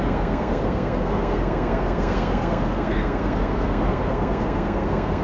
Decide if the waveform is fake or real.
fake